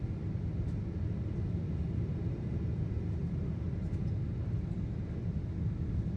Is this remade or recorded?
recorded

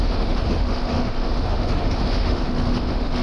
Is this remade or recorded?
remade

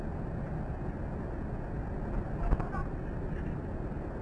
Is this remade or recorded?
recorded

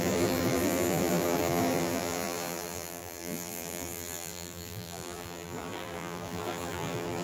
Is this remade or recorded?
remade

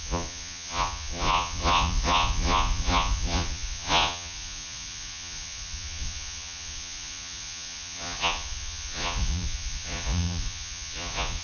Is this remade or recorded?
remade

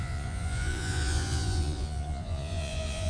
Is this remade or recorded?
remade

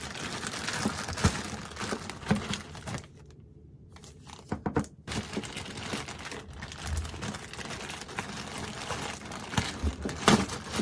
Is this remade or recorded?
recorded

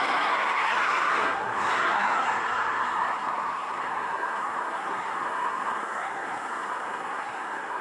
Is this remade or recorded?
remade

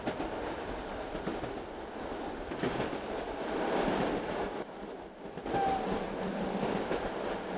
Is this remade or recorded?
recorded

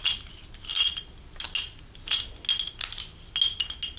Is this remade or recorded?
recorded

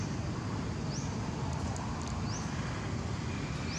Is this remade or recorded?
recorded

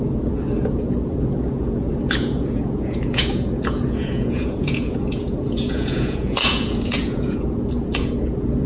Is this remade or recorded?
remade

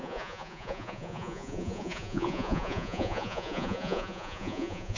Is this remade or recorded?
remade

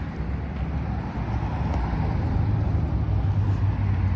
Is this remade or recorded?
recorded